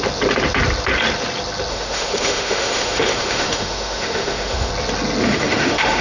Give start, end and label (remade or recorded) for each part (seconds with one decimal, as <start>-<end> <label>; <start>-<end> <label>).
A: 0.0-1.7 recorded; 1.7-4.7 remade; 4.7-5.2 recorded; 5.2-6.0 remade